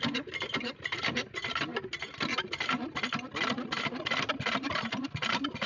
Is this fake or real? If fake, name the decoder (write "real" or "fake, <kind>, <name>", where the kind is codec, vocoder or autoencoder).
real